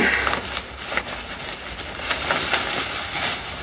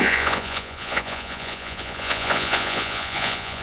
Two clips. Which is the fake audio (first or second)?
second